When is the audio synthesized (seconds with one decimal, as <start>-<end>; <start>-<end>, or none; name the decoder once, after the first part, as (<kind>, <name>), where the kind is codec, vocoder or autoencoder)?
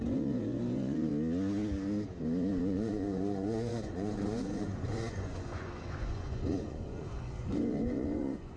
0.0-1.1 (vocoder, Vocos); 2.6-8.6